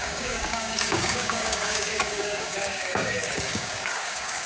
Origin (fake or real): fake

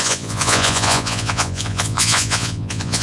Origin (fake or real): fake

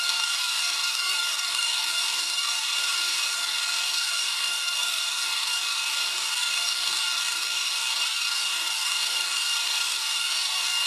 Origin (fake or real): fake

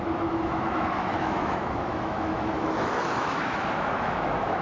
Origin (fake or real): fake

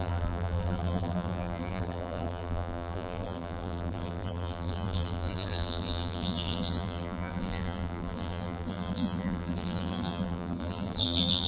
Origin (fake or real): fake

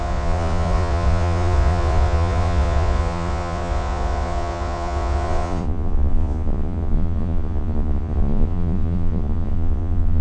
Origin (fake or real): fake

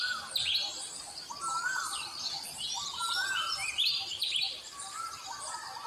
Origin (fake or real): real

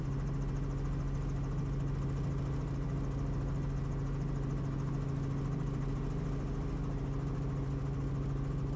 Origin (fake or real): real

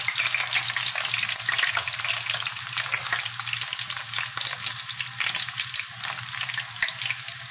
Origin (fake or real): real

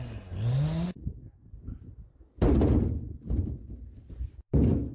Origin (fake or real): real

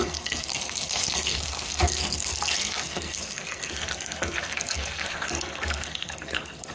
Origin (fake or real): fake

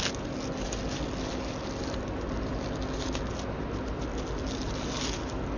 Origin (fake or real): real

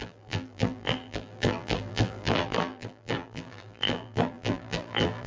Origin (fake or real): fake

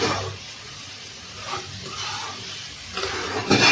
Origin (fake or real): real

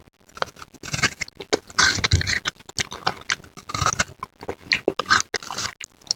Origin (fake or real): real